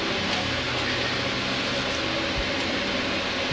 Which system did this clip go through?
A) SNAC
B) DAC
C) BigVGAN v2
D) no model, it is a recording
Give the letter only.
D